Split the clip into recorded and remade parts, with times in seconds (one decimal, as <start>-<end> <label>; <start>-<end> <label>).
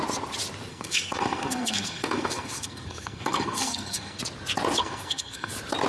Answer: 0.0-0.7 recorded; 0.7-4.2 remade; 4.2-4.8 recorded; 4.8-5.5 remade; 5.5-5.9 recorded